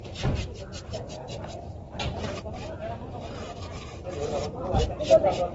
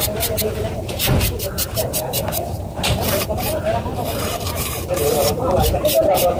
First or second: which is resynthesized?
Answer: second